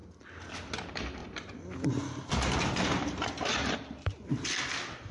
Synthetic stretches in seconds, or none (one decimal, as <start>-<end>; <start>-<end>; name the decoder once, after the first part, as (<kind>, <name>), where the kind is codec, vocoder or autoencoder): 1.2-4.3 (vocoder, BigVGAN v2)